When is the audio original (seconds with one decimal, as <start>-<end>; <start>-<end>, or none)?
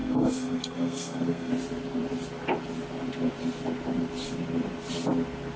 1.5-5.6